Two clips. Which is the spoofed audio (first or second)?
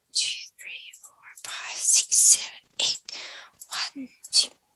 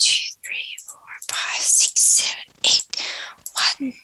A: first